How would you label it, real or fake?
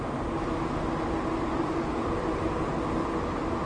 real